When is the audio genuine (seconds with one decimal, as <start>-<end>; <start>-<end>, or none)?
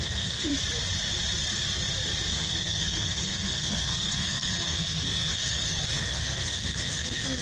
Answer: 0.5-2.3